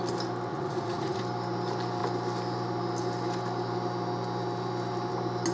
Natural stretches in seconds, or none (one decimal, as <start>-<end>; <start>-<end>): 0.0-0.5; 1.2-5.5